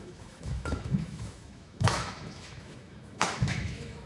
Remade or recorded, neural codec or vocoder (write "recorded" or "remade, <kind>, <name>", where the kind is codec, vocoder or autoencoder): remade, autoencoder, DAC-VAE